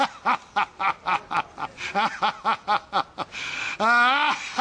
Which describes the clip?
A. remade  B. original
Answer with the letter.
B